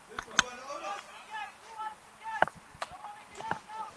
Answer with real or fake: real